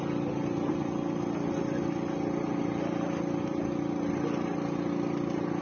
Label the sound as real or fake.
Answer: real